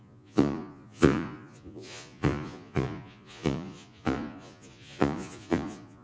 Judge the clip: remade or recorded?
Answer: remade